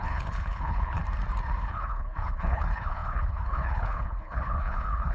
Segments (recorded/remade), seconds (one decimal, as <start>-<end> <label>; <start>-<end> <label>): 0.0-1.0 remade; 1.0-1.6 recorded; 1.6-5.1 remade